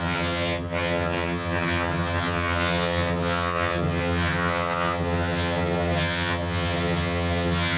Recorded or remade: remade